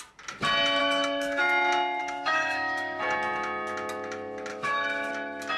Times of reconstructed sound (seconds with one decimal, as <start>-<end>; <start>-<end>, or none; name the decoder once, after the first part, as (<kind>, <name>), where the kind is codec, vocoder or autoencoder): 0.8-1.4 (autoencoder, DAC-VAE); 2.0-3.0; 4.5-5.1